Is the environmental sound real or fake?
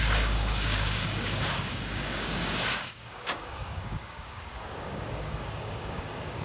fake